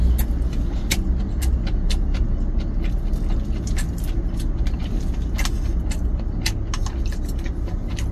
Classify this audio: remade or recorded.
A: recorded